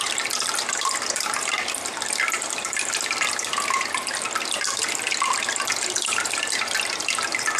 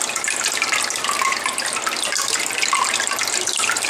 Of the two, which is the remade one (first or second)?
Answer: first